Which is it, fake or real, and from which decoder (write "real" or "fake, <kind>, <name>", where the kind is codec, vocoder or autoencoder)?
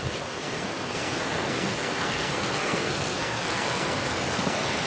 fake, codec, SNAC